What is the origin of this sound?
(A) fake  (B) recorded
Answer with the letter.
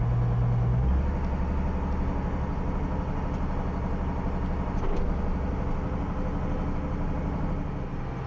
B